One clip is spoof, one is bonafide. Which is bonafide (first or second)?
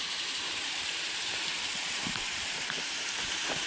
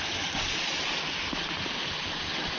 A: second